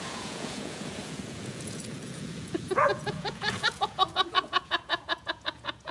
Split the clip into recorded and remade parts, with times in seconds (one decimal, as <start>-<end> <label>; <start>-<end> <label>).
0.0-5.9 remade